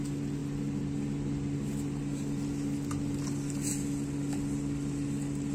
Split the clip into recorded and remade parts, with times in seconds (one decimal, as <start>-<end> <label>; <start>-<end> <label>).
0.0-5.5 recorded